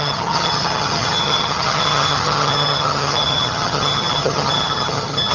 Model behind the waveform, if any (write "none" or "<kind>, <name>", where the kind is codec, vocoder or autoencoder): vocoder, HiFi-GAN